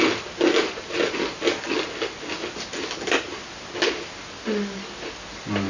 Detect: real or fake real